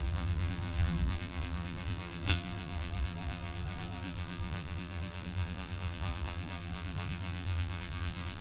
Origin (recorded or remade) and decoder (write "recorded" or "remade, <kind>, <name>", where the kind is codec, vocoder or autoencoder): remade, vocoder, BigVGAN v2